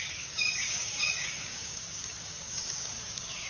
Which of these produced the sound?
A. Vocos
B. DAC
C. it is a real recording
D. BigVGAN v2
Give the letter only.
B